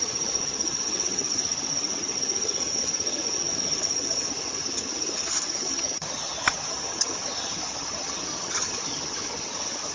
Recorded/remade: remade